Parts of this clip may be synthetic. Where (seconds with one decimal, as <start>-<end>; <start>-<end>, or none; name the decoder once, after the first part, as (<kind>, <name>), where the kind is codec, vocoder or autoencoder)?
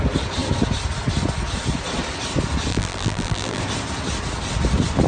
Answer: 2.7-3.6 (vocoder, BigVGAN v2)